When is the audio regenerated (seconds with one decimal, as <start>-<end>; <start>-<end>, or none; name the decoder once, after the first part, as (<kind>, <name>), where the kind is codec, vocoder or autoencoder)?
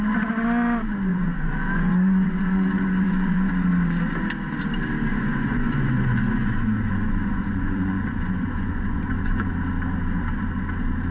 1.1-3.5 (vocoder, Vocos); 5.1-9.5